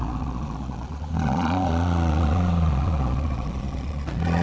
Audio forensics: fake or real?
fake